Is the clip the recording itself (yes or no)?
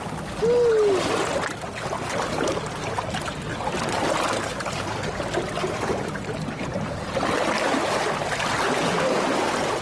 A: yes